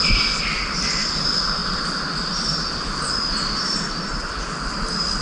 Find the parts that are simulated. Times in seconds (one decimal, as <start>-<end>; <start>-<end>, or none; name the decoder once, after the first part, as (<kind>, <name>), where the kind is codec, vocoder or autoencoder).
none